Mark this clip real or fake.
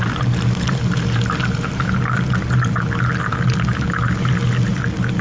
real